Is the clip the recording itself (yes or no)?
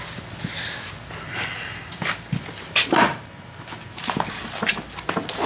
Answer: yes